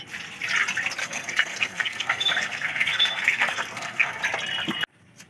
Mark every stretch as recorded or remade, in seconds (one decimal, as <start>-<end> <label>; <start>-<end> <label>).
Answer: 0.0-1.0 recorded; 1.0-4.2 remade; 4.2-5.3 recorded